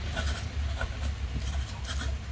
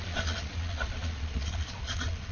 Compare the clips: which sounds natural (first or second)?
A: first